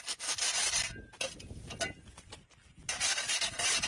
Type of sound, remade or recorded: recorded